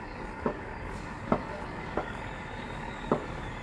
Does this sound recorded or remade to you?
remade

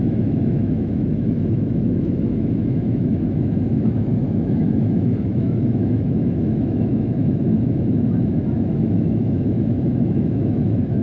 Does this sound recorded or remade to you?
remade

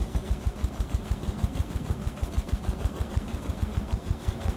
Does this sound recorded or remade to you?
remade